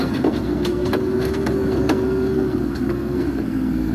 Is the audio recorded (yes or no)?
no